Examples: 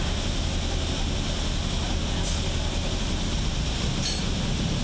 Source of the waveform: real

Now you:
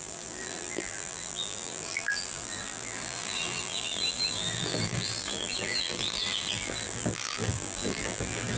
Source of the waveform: fake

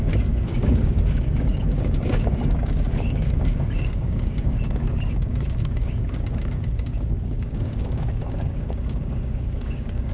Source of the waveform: fake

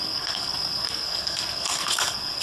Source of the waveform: fake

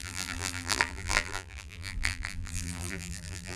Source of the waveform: fake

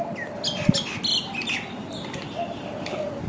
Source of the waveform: real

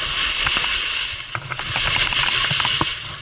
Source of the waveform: real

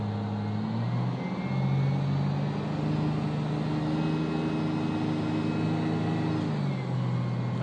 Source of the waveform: real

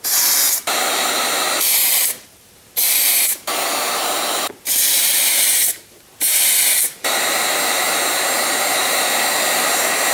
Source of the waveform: fake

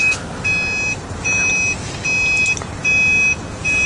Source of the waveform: real